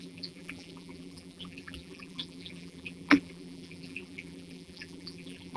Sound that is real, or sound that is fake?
fake